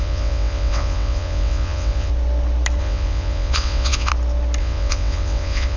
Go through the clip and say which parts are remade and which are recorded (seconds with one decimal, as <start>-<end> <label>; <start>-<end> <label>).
0.0-2.1 remade; 2.1-2.8 recorded; 2.8-4.1 remade; 4.1-4.6 recorded; 4.6-5.8 remade